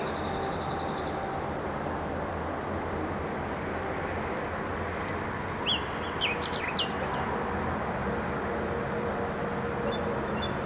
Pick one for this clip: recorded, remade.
recorded